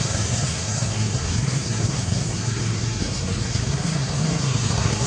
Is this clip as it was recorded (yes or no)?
no